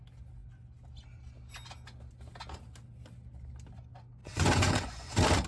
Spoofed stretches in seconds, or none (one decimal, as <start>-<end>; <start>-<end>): 4.2-5.1